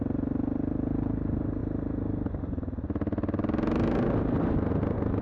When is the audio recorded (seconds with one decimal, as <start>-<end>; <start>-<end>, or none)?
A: 0.0-5.2